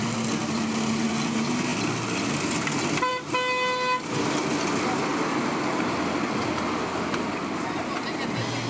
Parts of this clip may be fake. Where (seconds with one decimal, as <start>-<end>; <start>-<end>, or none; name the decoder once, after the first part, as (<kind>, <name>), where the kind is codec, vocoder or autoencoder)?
none